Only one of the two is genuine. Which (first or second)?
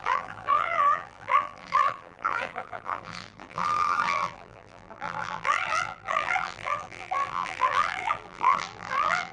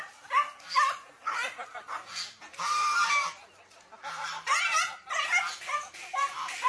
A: second